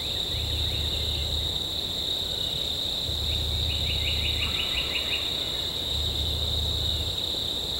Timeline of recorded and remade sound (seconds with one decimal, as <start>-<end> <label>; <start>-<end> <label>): 0.0-7.8 recorded